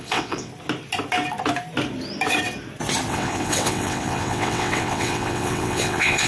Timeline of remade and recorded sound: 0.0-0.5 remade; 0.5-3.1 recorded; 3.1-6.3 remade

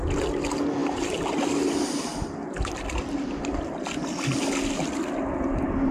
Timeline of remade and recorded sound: 0.0-5.9 recorded